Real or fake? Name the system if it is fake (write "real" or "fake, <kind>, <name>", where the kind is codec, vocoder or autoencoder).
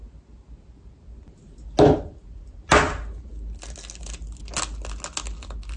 real